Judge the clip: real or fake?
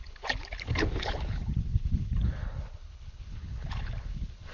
fake